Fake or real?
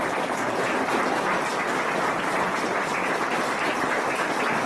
real